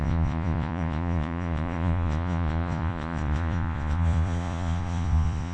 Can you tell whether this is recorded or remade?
remade